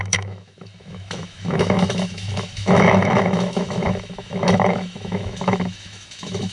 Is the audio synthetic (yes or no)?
yes